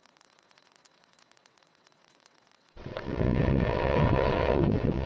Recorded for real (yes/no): no